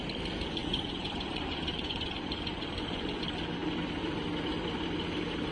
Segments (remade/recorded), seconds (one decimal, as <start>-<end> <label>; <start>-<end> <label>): 0.0-0.6 recorded; 0.6-3.2 remade; 3.2-5.5 recorded